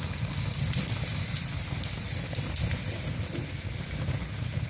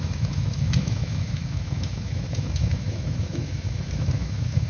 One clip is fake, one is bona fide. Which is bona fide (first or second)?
first